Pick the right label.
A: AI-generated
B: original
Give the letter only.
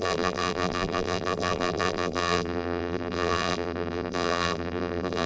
A